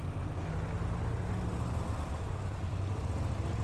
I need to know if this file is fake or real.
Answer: real